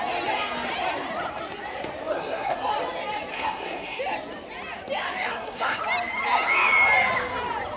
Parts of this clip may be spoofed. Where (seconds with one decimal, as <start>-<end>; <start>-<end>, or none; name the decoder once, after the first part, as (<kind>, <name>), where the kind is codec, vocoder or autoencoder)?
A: 2.1-2.7 (codec, SNAC); 3.3-4.0; 5.3-5.8